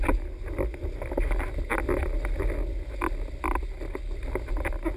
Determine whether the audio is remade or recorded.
recorded